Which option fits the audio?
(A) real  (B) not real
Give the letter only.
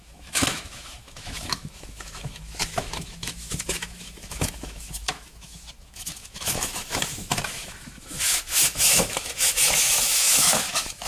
B